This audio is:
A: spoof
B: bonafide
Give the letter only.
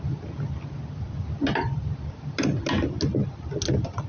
B